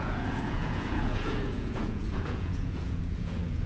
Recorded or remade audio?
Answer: remade